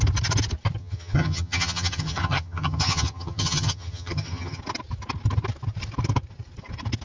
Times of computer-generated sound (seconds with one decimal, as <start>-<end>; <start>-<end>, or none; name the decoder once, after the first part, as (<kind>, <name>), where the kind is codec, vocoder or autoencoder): 0.8-4.6 (vocoder, HiFi-GAN)